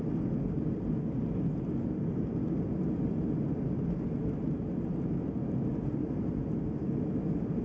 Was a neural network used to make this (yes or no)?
no